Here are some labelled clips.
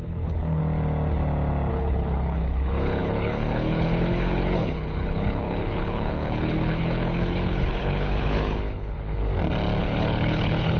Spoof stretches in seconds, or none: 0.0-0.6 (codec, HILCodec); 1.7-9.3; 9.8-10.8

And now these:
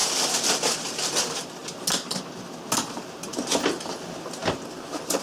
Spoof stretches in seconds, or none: none